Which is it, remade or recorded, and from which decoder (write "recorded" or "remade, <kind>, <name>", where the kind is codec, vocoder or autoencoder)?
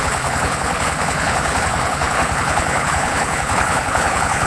remade, codec, HILCodec